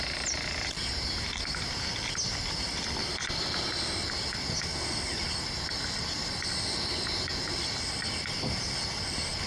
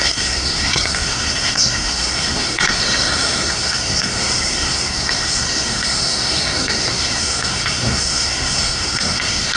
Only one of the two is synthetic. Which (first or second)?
second